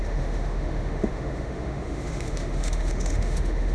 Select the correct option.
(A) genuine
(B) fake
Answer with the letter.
B